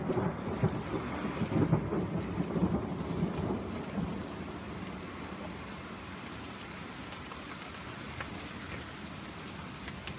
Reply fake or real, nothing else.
real